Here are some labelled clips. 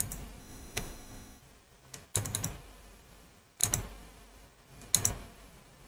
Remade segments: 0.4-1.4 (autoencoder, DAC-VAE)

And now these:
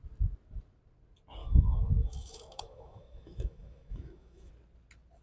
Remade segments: 1.4-4.5 (autoencoder, DAC-VAE)

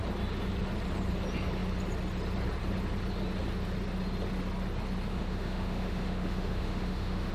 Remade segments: 5.1-7.3 (autoencoder, DAC-VAE)

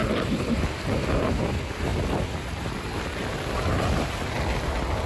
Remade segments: none

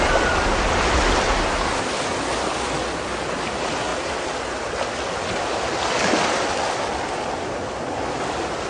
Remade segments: none

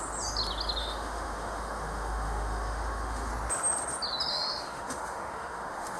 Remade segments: 0.8-3.3 (autoencoder, DAC-VAE); 4.3-6.0